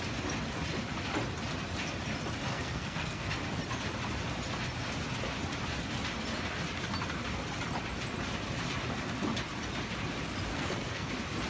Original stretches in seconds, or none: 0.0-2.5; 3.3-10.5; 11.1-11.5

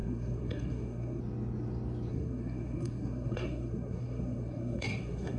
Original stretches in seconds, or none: 1.2-2.1

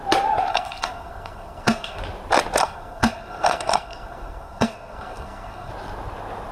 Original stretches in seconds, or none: 0.0-0.5; 2.0-2.6; 5.7-6.5

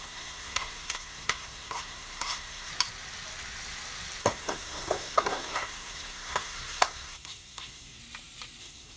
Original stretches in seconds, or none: 2.7-4.2; 8.0-8.6

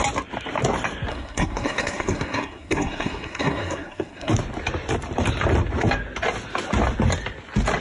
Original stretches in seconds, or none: 0.0-1.1; 4.3-7.8

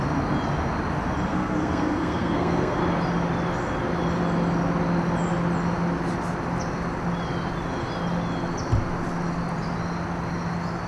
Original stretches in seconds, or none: 0.0-1.3; 2.8-10.9